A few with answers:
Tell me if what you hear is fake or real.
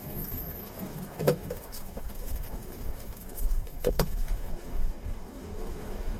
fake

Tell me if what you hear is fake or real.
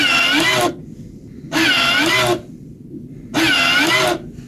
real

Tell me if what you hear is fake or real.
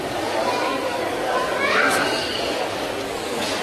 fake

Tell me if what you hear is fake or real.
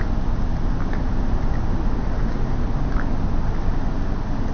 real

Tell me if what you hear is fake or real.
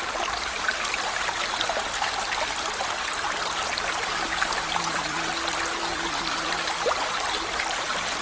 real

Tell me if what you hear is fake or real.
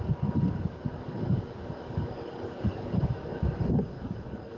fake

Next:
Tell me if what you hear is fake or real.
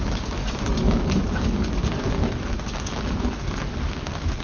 fake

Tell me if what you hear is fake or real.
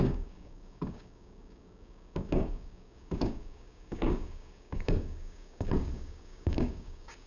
fake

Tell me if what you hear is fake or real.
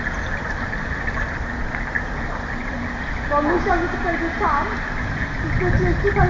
real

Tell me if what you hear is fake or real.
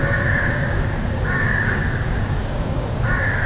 fake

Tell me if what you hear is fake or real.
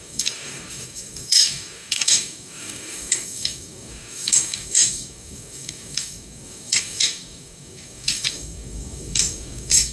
fake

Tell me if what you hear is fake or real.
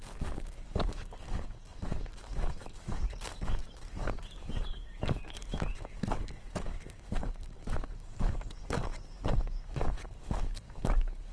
fake